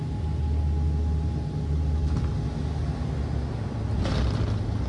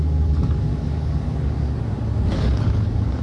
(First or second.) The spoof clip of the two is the second